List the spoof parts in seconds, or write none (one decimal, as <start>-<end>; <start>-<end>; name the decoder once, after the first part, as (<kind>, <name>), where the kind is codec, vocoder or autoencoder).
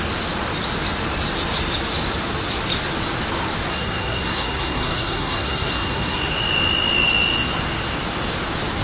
3.7-6.4 (codec, SNAC)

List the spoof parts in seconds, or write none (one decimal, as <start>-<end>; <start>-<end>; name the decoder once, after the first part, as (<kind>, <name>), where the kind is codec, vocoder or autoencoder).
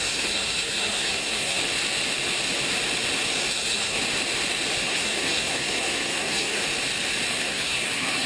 0.0-1.6 (codec, SNAC); 3.5-4.0; 4.8-6.6; 7.3-8.3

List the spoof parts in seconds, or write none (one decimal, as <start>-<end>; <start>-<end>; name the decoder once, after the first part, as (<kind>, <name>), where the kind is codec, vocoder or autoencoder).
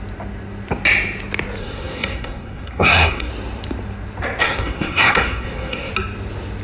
1.6-3.3 (codec, SNAC); 4.4-5.9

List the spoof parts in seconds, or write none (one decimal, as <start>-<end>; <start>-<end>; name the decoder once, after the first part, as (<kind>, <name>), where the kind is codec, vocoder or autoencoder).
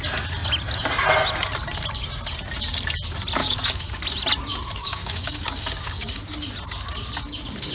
3.4-4.0 (codec, DAC); 4.8-6.2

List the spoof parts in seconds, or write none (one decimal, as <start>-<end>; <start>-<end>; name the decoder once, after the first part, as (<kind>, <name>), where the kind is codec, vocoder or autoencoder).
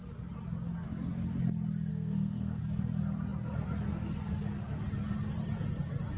1.9-2.6 (codec, SNAC)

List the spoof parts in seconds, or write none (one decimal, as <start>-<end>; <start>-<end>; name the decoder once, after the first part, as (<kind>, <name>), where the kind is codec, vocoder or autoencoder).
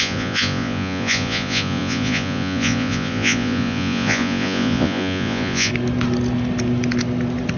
0.0-5.7 (vocoder, Vocos)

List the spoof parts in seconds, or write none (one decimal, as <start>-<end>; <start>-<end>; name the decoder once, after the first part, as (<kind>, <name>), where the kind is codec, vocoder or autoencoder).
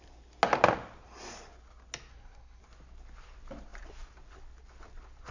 2.1-2.6 (codec, SNAC)